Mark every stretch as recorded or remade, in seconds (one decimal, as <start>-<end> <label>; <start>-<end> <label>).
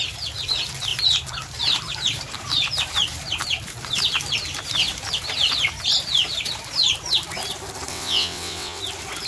0.0-7.9 recorded; 7.9-8.8 remade; 8.8-9.3 recorded